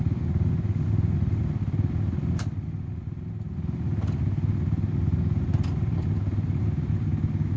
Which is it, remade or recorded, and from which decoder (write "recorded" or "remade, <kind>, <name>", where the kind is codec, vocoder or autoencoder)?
recorded